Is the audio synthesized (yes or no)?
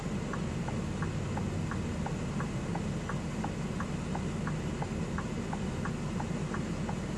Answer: no